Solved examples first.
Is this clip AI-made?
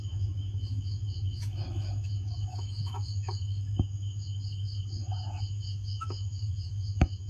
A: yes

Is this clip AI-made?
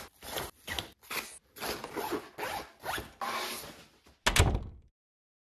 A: no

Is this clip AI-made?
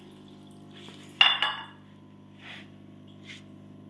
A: no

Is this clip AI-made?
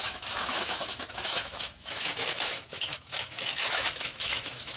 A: yes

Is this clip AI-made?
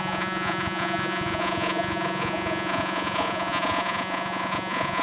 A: yes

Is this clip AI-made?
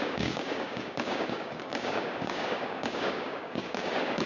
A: yes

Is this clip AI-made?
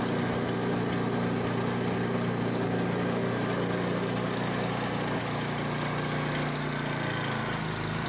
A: no